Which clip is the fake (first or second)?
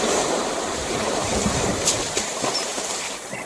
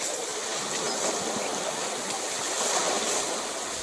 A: first